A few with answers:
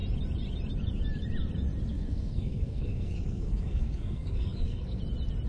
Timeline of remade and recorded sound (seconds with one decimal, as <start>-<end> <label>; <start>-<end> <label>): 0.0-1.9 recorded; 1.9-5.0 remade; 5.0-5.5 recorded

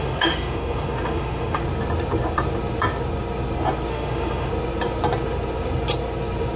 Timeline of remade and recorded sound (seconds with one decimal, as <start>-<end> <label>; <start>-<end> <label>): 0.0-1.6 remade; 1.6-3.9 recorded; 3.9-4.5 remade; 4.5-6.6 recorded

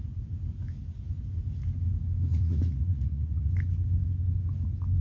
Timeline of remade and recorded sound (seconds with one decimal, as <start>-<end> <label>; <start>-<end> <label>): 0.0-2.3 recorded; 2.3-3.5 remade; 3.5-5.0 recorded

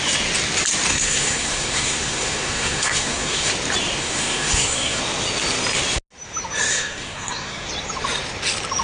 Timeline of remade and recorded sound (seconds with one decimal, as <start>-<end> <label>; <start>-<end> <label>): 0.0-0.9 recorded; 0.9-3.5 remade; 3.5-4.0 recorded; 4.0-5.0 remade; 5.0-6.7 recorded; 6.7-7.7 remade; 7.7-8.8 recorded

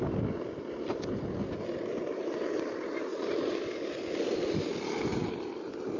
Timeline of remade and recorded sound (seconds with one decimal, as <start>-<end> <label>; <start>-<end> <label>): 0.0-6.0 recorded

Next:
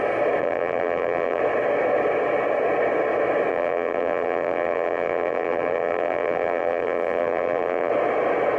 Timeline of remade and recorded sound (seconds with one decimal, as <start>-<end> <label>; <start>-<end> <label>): 0.0-0.4 recorded; 0.4-1.4 remade; 1.4-3.5 recorded; 3.5-7.9 remade; 7.9-8.6 recorded

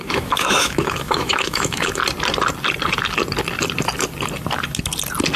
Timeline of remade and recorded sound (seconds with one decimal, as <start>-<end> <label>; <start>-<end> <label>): 0.0-2.0 remade; 2.0-5.4 recorded

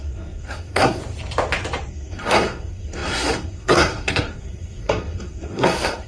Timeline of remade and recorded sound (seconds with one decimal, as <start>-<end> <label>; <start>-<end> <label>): 0.0-1.0 remade; 1.0-1.9 recorded; 1.9-6.1 remade